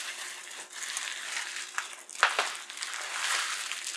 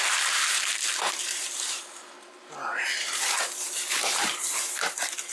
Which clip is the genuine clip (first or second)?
first